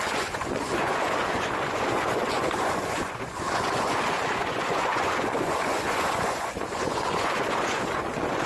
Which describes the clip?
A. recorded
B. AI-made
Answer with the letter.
B